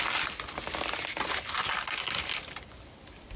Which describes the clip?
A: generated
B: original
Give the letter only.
B